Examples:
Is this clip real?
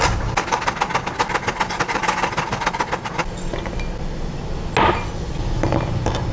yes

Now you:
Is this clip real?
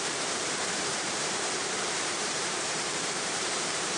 no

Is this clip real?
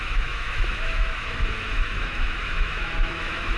no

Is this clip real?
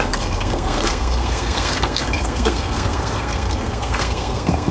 no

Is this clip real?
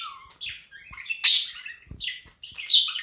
yes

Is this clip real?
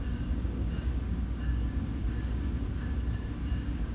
no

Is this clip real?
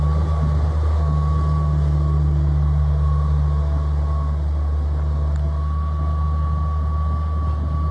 yes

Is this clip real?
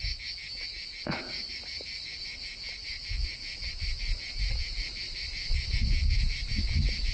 yes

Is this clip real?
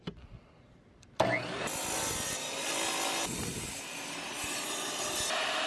yes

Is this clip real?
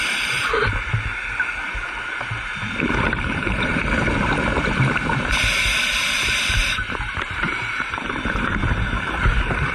no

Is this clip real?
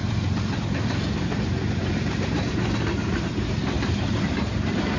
no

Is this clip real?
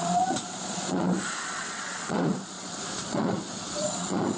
no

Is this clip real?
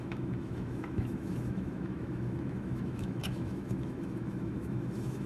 no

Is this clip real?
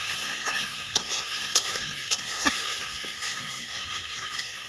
no